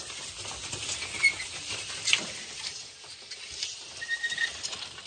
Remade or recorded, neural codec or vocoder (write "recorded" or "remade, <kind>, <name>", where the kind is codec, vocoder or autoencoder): recorded